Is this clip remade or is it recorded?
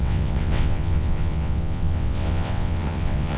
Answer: remade